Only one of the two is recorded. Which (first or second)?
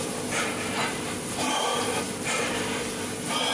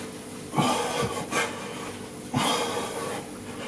second